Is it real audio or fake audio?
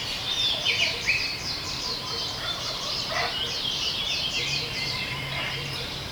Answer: fake